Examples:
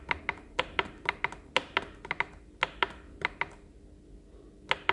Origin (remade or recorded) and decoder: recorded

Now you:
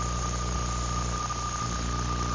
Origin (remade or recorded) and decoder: recorded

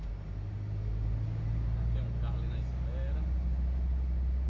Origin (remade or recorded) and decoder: recorded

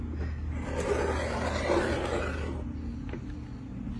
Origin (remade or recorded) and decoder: recorded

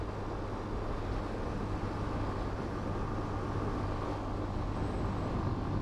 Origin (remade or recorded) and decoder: recorded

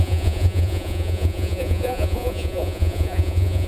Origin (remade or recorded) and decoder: remade, vocoder, Vocos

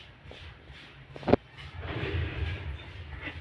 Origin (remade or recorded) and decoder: remade, vocoder, BigVGAN v2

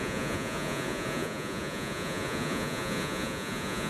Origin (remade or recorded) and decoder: remade, vocoder, Vocos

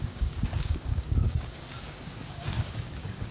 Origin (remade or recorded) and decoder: remade, codec, DAC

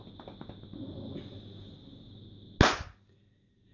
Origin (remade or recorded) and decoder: recorded